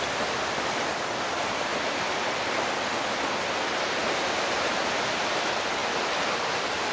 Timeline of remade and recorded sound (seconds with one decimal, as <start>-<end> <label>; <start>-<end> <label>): 0.0-1.7 recorded; 1.7-2.4 remade; 2.4-4.0 recorded; 4.0-4.7 remade; 4.7-5.8 recorded; 5.8-6.5 remade; 6.5-6.9 recorded